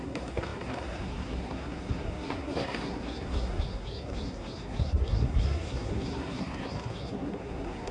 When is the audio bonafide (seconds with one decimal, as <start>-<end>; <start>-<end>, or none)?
none